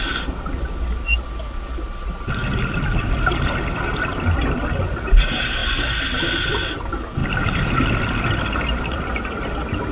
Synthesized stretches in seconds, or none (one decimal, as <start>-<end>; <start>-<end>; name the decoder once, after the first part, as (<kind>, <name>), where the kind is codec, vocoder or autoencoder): none